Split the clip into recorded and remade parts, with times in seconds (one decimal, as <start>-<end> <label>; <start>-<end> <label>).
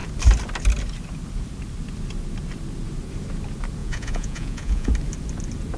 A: 0.0-3.8 recorded; 3.8-4.9 remade; 4.9-5.8 recorded